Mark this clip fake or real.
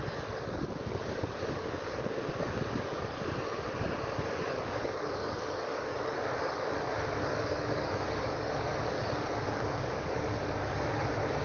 fake